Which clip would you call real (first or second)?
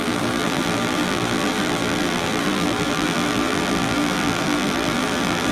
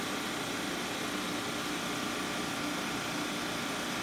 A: second